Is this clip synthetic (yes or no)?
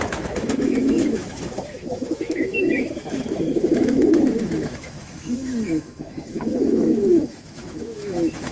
yes